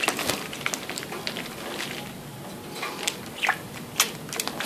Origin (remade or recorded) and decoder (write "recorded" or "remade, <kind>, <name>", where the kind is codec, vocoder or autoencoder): recorded